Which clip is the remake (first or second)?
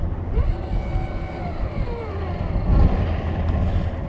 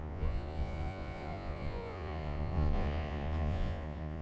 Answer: second